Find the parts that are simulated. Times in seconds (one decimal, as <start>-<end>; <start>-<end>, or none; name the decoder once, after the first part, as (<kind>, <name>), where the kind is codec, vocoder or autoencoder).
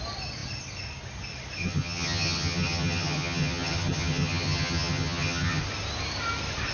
1.6-5.6 (vocoder, HiFi-GAN)